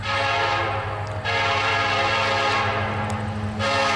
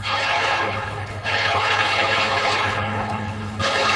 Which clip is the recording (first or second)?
first